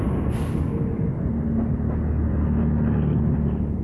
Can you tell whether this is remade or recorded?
recorded